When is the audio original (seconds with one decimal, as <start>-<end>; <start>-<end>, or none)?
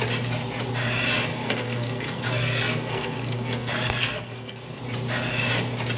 0.0-1.3; 4.8-6.0